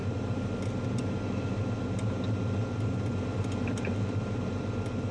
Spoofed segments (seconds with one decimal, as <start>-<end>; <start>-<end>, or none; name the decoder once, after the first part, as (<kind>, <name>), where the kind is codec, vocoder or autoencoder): none